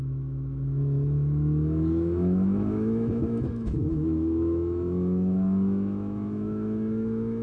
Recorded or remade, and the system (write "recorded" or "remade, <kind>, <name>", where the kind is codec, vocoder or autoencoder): remade, autoencoder, DAC-VAE